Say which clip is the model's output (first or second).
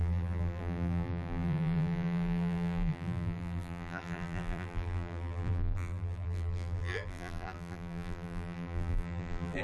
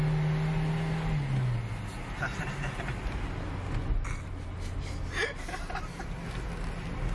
first